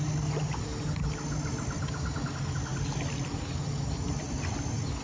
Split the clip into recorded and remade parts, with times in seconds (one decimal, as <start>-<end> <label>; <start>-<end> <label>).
0.0-5.0 recorded